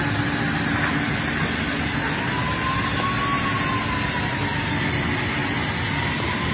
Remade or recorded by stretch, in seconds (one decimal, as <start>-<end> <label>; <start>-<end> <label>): 0.0-6.5 recorded

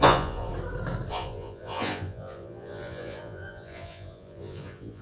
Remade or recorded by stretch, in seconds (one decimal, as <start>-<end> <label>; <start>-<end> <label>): 0.0-0.5 remade; 0.5-1.1 recorded; 1.1-5.0 remade

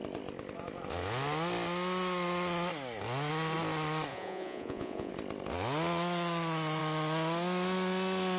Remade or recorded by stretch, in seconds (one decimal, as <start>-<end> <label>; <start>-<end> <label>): 0.0-4.1 recorded; 4.1-5.1 remade; 5.1-8.4 recorded

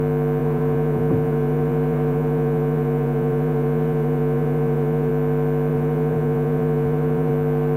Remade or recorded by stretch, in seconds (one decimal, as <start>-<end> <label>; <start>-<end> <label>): 0.0-0.4 recorded; 0.4-5.1 remade; 5.1-5.7 recorded; 5.7-7.3 remade; 7.3-7.8 recorded